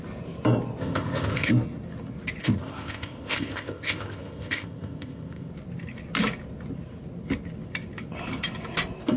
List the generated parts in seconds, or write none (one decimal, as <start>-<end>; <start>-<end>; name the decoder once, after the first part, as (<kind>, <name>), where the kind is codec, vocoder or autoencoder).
0.8-1.5 (codec, ZipCodec); 2.4-5.5